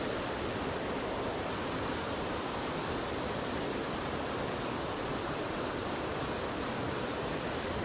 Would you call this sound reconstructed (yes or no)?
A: yes